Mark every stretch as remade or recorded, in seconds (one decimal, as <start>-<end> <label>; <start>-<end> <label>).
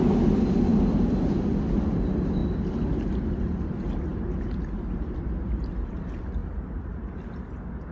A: 0.0-4.1 recorded; 4.1-5.6 remade; 5.6-7.9 recorded